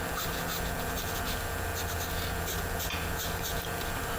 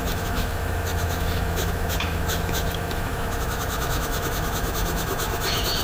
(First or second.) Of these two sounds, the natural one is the first